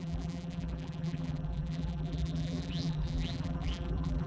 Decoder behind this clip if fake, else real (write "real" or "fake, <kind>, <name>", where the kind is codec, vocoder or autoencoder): fake, vocoder, BigVGAN v2